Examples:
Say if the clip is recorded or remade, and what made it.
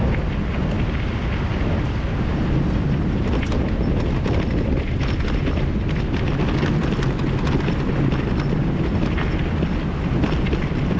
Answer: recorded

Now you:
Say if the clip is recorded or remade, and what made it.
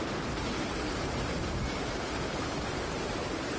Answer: remade, vocoder, BigVGAN v2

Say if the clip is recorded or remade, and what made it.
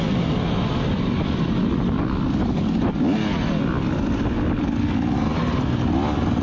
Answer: recorded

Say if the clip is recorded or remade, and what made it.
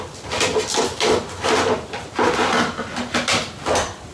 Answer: recorded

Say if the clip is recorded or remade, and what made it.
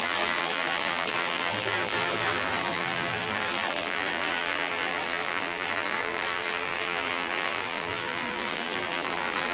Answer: remade, vocoder, BigVGAN v2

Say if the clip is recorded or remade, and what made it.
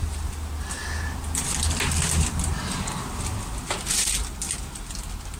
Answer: remade, vocoder, BigVGAN v2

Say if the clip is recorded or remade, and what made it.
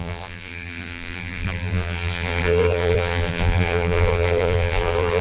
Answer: remade, vocoder, BigVGAN v2